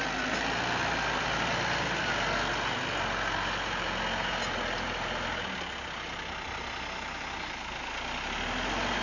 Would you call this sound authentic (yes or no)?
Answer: yes